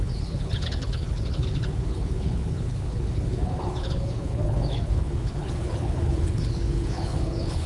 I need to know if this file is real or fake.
fake